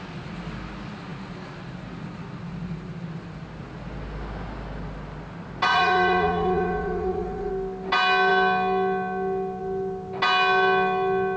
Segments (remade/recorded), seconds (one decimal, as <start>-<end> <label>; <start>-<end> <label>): 0.0-5.7 recorded; 5.7-7.5 remade; 7.5-11.4 recorded